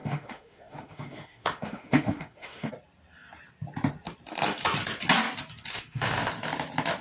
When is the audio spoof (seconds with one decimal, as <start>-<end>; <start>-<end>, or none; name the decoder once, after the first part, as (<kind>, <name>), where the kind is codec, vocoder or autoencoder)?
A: 0.0-2.7 (autoencoder, DAC-VAE); 5.7-6.3